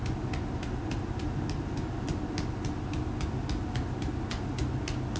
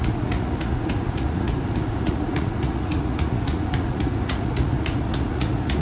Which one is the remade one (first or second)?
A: second